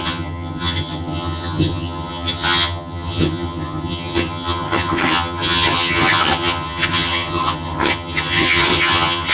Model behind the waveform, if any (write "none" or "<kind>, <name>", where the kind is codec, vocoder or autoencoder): vocoder, HiFi-GAN